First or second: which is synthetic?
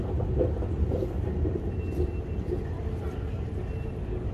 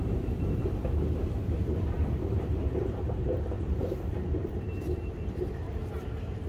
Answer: second